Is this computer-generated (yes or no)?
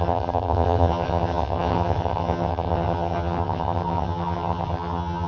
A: yes